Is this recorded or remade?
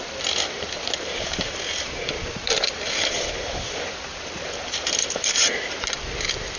remade